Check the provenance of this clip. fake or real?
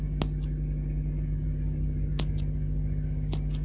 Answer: real